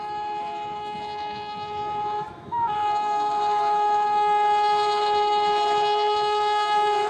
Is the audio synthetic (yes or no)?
yes